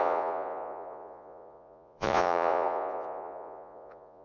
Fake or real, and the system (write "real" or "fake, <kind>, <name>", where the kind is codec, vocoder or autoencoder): fake, vocoder, Vocos